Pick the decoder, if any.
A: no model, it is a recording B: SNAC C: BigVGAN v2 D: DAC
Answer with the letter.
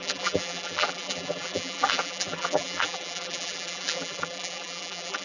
C